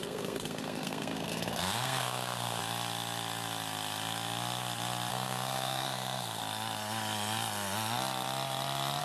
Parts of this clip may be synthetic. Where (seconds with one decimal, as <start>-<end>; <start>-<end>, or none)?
0.0-2.6; 5.1-6.4